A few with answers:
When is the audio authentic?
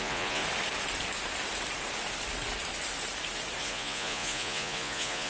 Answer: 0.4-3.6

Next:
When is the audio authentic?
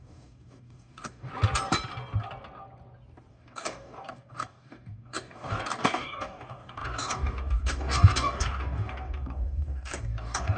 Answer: 1.3-3.3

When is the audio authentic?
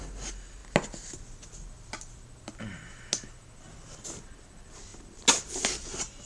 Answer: 0.0-6.3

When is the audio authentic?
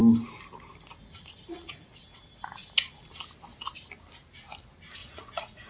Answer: 0.0-5.0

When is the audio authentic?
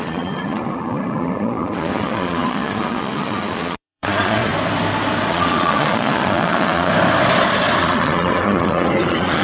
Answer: 4.5-5.3; 6.9-7.8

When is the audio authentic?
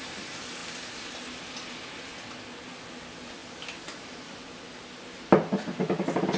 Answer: 0.0-6.4